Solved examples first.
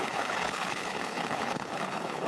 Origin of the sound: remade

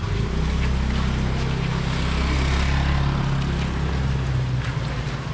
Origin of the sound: recorded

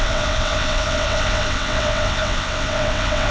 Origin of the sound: remade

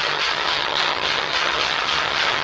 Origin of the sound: remade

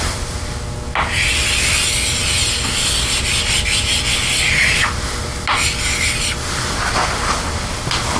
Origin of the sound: recorded